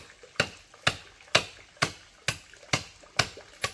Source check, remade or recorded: recorded